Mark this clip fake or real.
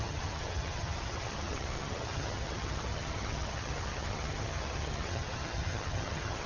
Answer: fake